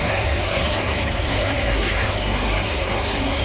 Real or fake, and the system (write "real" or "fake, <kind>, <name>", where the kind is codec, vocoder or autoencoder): fake, codec, SNAC